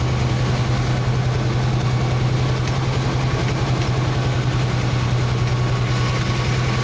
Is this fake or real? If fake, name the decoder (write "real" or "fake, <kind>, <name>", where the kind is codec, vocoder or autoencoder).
real